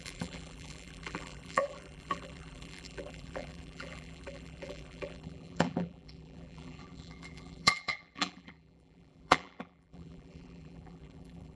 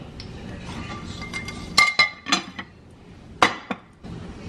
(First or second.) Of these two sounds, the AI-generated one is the first